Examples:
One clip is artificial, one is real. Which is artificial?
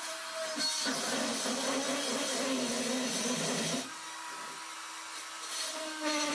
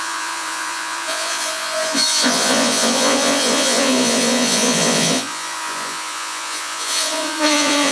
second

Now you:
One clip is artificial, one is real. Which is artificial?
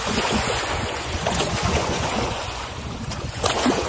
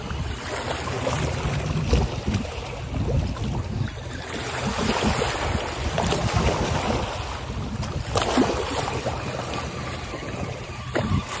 first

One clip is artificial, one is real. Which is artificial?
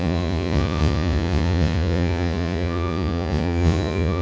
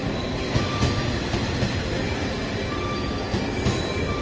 first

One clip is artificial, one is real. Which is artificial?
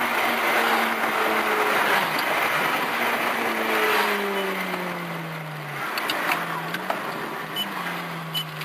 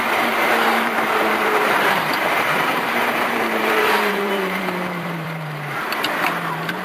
second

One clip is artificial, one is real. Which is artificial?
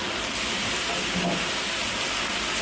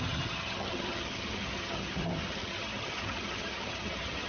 second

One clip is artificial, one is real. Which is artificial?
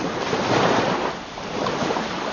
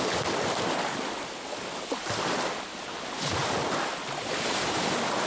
first